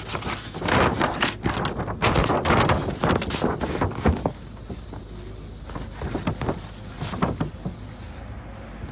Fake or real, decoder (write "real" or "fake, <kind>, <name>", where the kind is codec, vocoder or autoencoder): real